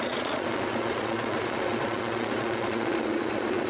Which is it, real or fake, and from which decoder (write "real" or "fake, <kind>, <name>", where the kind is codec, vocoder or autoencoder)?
fake, vocoder, Vocos